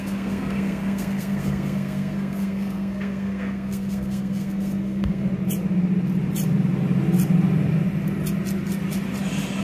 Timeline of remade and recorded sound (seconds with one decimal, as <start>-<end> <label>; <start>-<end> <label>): 0.0-5.3 remade; 5.3-9.6 recorded